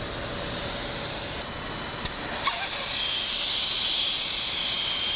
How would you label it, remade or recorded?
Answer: recorded